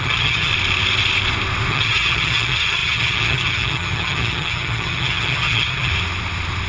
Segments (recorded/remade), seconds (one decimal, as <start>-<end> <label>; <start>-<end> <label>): 0.0-0.5 remade; 0.5-1.7 recorded; 1.7-5.9 remade; 5.9-6.7 recorded